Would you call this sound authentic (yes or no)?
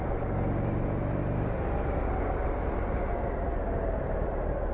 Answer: yes